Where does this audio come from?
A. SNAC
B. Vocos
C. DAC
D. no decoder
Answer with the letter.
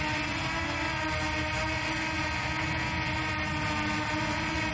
D